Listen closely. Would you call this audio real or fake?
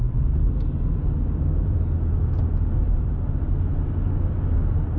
real